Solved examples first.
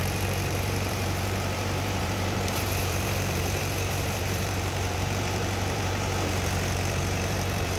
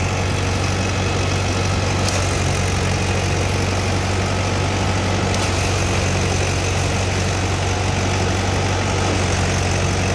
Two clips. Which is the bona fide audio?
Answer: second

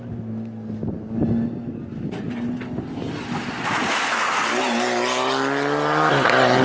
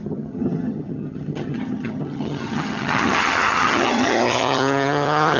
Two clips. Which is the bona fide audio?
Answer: first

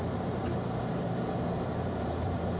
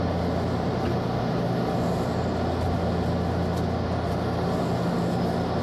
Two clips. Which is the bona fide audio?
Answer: second